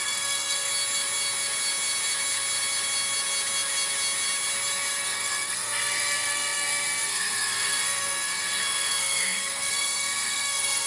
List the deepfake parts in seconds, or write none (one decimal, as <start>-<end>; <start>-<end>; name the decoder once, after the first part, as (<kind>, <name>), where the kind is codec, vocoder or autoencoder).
0.0-0.7 (codec, SNAC); 5.0-10.9